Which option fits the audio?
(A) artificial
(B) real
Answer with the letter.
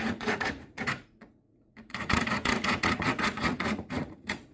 A